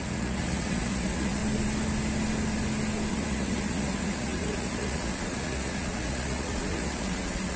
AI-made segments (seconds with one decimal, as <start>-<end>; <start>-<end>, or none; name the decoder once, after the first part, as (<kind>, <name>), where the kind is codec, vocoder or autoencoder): 0.0-1.4 (vocoder, Vocos); 3.1-7.6

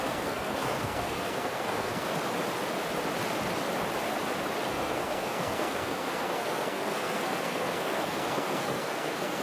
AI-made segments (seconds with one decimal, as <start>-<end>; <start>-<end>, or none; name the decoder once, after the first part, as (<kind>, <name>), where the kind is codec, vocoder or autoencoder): 0.0-2.1 (codec, SNAC); 4.7-9.4

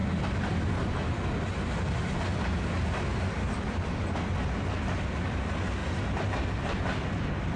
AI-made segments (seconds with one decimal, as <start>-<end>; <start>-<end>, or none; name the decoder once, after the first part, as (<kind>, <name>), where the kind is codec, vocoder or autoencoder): none

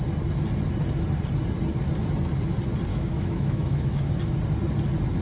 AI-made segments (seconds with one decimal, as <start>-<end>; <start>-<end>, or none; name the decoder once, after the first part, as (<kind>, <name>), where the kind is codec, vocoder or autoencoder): 2.9-4.1 (autoencoder, DAC-VAE)

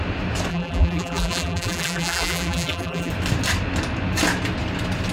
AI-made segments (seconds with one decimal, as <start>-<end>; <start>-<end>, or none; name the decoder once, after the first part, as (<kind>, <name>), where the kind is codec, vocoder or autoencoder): 0.5-3.1 (vocoder, BigVGAN v2)

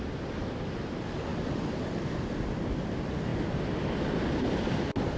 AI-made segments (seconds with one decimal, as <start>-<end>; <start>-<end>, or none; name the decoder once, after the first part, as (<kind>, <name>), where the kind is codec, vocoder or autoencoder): none

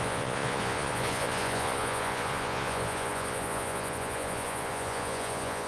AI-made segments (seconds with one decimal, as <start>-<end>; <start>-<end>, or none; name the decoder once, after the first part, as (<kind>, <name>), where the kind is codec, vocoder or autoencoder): 0.0-5.7 (vocoder, Vocos)